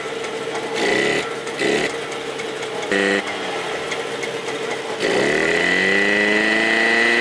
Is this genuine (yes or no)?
yes